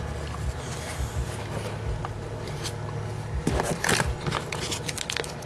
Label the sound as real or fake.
real